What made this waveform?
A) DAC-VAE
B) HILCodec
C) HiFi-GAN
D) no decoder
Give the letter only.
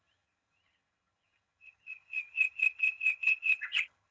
C